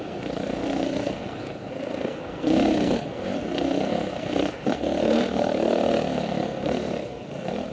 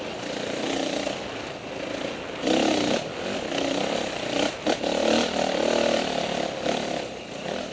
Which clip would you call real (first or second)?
second